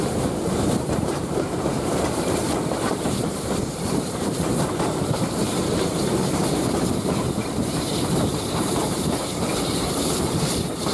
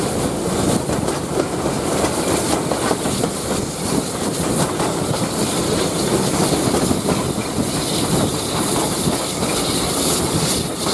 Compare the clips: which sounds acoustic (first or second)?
second